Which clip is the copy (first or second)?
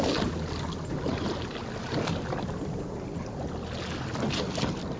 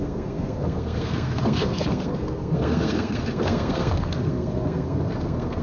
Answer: second